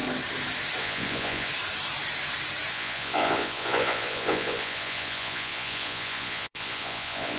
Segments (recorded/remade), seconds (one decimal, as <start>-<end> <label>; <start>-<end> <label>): 0.0-0.8 recorded; 0.8-1.5 remade; 1.5-2.7 recorded; 2.7-7.4 remade